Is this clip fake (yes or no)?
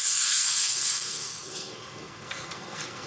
yes